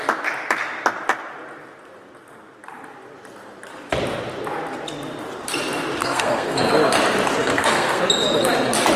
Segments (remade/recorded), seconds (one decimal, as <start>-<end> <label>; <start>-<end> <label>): 0.0-6.0 recorded; 6.0-6.7 remade; 6.7-7.4 recorded; 7.4-8.0 remade; 8.0-9.0 recorded